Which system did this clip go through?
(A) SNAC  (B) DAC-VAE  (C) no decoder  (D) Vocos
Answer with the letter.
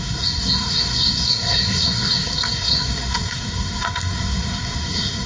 A